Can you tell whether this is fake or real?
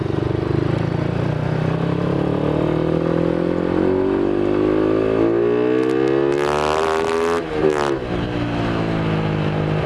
real